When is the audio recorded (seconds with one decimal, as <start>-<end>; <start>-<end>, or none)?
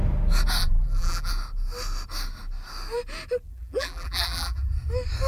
0.0-0.6; 1.3-3.5; 4.7-5.3